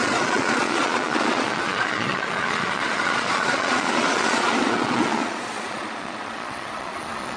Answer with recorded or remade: remade